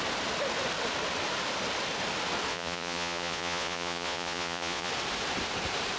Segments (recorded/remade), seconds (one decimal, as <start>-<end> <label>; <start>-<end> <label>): 0.0-2.5 recorded; 2.5-4.9 remade; 4.9-6.0 recorded